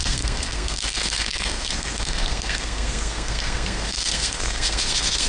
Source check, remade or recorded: remade